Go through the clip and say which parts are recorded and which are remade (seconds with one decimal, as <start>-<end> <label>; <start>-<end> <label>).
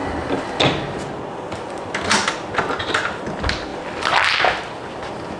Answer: 0.0-5.4 recorded